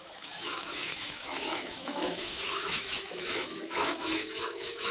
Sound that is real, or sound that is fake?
fake